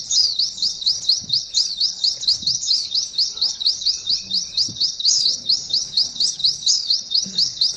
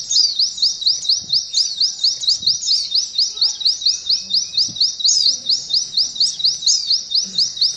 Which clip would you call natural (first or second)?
second